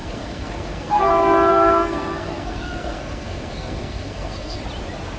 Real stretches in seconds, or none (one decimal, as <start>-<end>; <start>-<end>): 1.1-1.5; 4.6-5.2